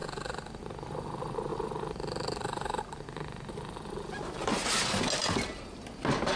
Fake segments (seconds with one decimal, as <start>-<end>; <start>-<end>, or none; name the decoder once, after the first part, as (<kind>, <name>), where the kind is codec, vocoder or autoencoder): 1.5-2.8 (vocoder, BigVGAN v2)